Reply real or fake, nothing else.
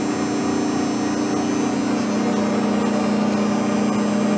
real